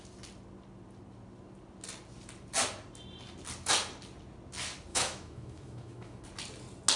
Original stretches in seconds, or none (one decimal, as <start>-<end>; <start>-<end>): 0.0-4.9; 6.2-7.0